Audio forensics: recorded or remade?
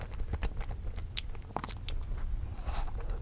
recorded